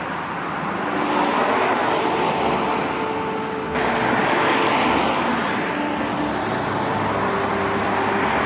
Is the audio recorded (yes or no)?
yes